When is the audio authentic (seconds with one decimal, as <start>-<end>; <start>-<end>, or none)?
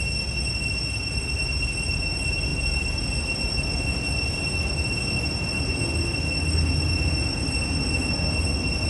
0.0-8.9